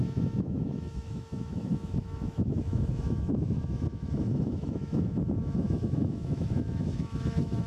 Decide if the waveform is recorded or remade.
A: remade